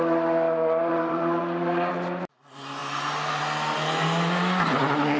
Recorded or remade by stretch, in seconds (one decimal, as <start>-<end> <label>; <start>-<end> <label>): 0.0-0.9 recorded; 0.9-1.9 remade; 1.9-2.8 recorded; 2.8-3.4 remade; 3.4-5.2 recorded